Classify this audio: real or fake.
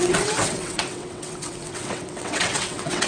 fake